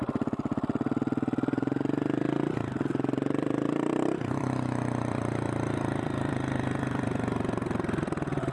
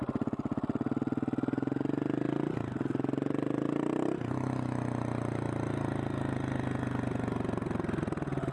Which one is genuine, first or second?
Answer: second